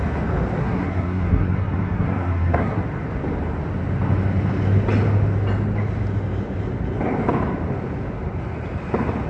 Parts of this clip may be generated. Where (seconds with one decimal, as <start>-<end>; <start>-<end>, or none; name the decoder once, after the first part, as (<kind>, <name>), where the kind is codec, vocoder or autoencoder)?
0.6-2.8 (codec, SNAC)